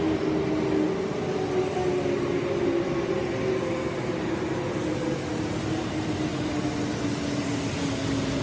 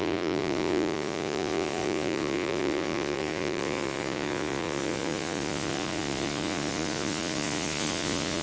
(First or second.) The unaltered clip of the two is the first